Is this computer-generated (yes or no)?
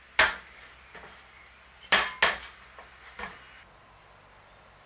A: no